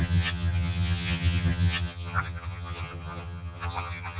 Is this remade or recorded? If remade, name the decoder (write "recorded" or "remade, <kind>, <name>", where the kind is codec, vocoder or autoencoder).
remade, vocoder, HiFi-GAN